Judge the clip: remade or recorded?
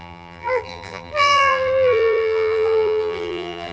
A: remade